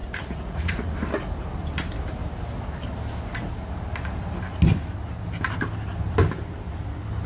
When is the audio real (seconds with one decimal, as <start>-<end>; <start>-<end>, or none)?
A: 0.9-7.3